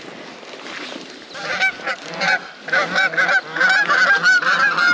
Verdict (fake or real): real